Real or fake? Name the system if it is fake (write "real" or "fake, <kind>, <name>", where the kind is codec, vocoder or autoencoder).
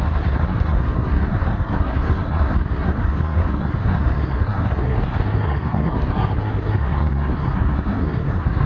fake, codec, SNAC